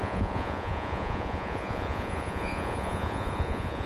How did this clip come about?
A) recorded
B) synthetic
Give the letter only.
B